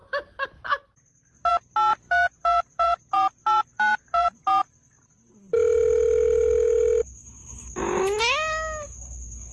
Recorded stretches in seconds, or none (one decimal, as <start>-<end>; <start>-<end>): 0.0-1.9; 5.5-9.5